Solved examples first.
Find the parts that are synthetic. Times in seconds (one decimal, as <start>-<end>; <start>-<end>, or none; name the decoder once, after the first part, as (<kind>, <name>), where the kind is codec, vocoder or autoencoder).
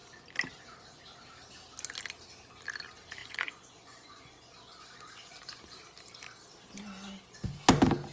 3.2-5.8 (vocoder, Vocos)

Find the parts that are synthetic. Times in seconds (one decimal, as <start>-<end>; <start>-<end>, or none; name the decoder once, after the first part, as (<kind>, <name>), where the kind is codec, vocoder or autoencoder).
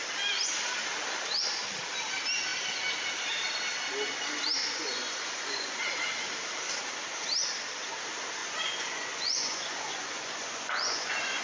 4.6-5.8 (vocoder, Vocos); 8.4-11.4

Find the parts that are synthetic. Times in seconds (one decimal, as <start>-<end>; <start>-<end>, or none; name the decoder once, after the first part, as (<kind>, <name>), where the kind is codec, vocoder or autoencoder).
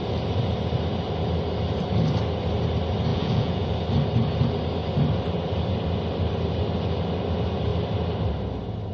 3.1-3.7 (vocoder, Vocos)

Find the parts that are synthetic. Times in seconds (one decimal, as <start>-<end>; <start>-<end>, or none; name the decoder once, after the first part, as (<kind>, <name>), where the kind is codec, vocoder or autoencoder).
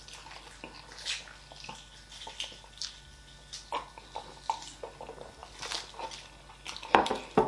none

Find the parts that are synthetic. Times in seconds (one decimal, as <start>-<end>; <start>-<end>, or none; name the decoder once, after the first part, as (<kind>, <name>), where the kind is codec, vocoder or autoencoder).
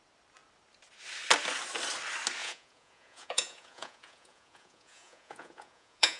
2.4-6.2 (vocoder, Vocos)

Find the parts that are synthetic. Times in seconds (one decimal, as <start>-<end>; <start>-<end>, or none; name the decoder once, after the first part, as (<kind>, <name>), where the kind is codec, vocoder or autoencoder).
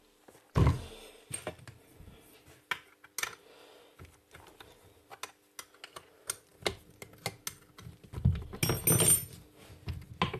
none